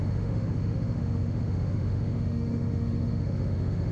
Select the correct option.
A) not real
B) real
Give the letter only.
A